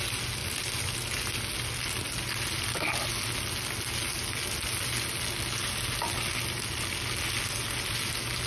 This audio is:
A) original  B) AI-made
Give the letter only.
A